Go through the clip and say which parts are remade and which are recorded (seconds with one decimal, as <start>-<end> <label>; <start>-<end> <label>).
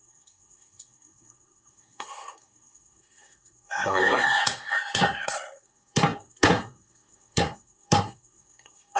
0.0-9.0 remade